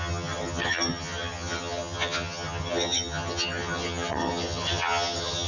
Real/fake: fake